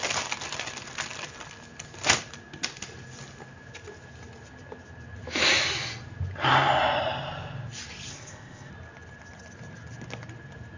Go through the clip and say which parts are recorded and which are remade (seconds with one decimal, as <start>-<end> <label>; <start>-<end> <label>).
0.0-8.1 recorded; 8.1-8.7 remade; 8.7-10.8 recorded